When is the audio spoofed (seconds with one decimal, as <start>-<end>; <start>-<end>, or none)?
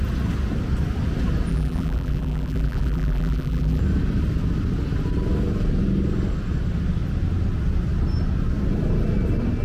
1.5-3.8